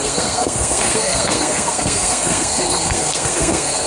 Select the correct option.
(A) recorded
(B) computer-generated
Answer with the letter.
B